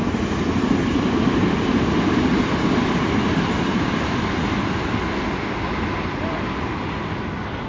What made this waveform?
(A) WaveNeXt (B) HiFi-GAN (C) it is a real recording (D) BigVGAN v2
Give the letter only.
C